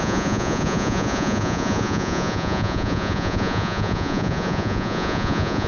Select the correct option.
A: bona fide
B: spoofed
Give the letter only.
B